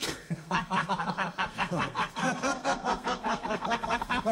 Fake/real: fake